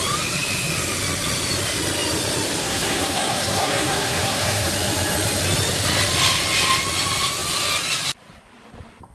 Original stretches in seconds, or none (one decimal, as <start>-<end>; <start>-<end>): 0.0-2.6; 4.7-9.1